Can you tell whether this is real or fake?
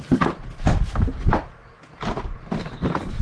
real